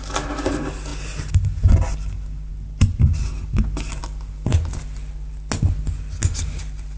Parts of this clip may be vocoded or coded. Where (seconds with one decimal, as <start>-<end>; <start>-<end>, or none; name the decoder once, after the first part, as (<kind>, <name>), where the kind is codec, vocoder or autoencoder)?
none